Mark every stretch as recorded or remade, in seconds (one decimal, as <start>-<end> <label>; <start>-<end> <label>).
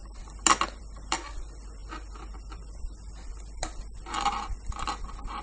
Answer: 0.0-1.8 remade; 1.8-2.6 recorded; 2.6-5.4 remade